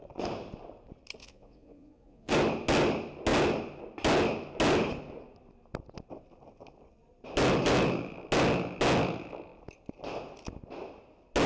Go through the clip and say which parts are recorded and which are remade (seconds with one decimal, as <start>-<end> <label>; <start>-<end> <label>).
0.0-1.2 recorded; 1.2-2.3 remade; 2.3-11.5 recorded